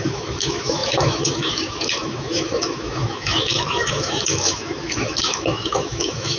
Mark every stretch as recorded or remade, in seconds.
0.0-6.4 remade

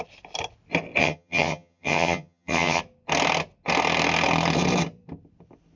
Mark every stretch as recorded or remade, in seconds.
0.0-1.0 recorded; 1.0-2.8 remade; 2.8-5.8 recorded

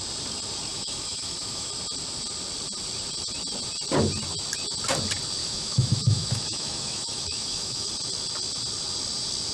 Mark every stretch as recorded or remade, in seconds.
0.0-0.7 recorded; 0.7-1.7 remade; 1.7-5.4 recorded; 5.4-7.9 remade; 7.9-9.5 recorded

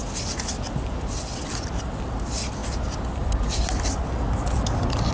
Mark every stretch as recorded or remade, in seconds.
0.0-5.1 recorded

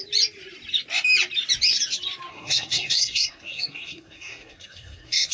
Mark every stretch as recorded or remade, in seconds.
0.0-2.3 recorded; 2.3-5.3 remade

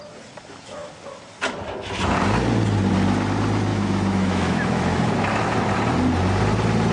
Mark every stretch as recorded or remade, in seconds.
0.0-3.7 recorded; 3.7-5.7 remade; 5.7-6.9 recorded

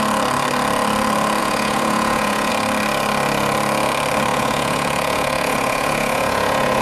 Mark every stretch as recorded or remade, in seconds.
0.0-1.4 recorded; 1.4-2.5 remade; 2.5-4.3 recorded; 4.3-6.8 remade

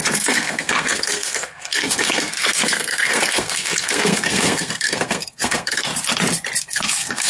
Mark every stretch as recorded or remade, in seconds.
0.0-5.9 remade; 5.9-6.6 recorded; 6.6-7.3 remade